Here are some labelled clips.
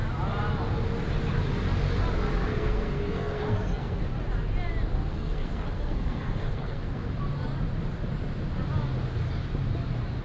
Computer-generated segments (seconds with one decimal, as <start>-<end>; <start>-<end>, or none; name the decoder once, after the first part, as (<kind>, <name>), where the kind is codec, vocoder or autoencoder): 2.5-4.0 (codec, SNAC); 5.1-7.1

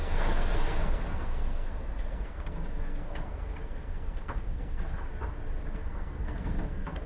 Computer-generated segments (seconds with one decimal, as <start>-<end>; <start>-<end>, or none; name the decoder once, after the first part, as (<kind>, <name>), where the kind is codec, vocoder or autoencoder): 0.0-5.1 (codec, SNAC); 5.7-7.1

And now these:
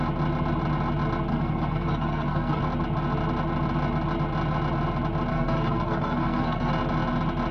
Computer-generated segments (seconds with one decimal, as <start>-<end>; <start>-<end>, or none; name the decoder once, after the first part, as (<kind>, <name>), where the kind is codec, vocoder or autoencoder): 1.3-2.6 (codec, SNAC); 5.3-6.7